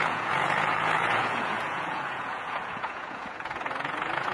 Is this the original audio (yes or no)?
no